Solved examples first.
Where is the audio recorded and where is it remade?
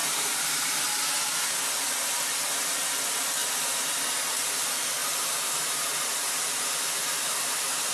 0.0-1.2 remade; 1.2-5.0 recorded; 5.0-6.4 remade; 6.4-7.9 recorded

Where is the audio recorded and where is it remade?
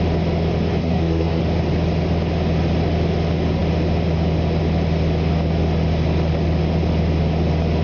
0.0-0.8 recorded; 0.8-1.4 remade; 1.4-7.8 recorded